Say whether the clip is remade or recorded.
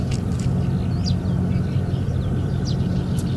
recorded